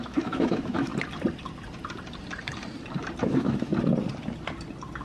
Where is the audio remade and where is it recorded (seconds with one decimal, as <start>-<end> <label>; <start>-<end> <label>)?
0.0-0.9 remade; 0.9-3.2 recorded; 3.2-3.7 remade; 3.7-5.0 recorded